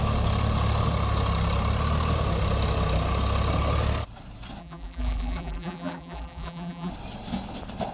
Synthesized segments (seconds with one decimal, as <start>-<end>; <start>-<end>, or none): 4.6-6.9